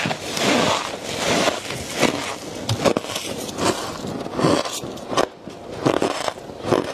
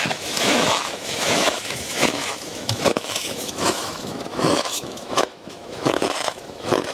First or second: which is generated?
second